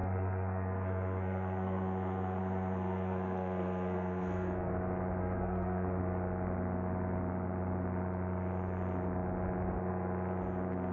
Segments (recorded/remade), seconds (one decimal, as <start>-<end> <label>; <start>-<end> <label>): 0.0-4.7 remade; 4.7-5.2 recorded; 5.2-6.0 remade; 6.0-10.9 recorded